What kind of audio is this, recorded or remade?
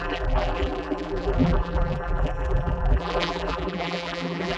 remade